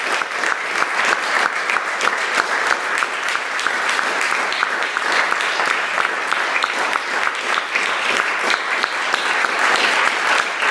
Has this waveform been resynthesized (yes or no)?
no